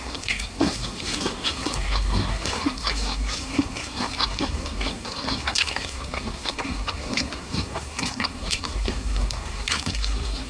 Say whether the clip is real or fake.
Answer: fake